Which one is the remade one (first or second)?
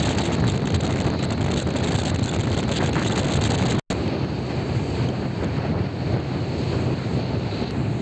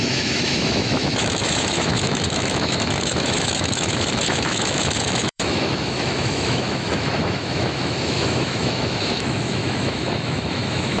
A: second